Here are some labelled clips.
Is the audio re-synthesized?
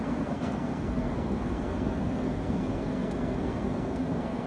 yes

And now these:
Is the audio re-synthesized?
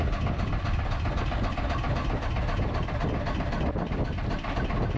no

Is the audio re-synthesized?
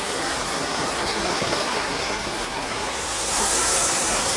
yes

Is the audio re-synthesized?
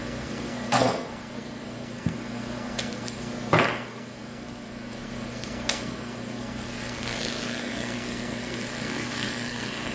yes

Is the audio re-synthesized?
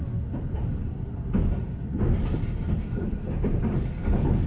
no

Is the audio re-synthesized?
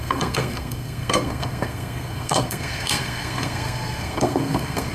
yes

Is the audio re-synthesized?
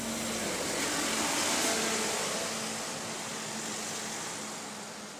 no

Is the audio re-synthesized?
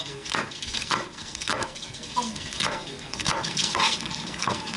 yes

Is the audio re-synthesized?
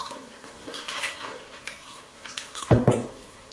yes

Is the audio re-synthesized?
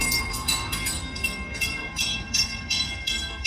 yes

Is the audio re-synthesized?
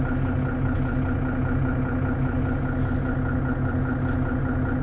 no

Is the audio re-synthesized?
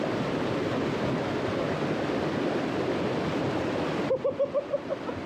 no